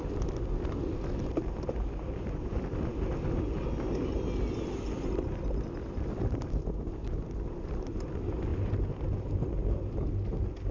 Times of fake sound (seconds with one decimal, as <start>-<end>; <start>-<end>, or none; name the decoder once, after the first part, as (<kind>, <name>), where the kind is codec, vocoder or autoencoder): none